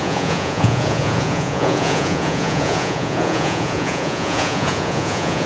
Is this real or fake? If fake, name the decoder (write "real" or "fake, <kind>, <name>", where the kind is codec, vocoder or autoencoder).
fake, vocoder, Vocos